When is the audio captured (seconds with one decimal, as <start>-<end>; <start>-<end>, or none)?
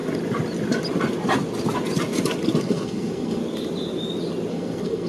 0.0-2.6; 3.4-4.5